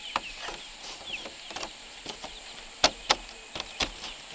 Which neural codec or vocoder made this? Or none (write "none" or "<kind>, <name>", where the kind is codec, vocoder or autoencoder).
none